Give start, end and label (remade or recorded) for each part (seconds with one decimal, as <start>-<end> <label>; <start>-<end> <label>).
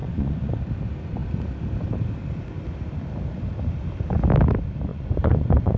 0.0-0.6 remade; 0.6-4.9 recorded; 4.9-5.8 remade